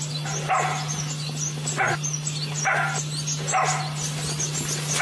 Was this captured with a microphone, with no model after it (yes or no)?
yes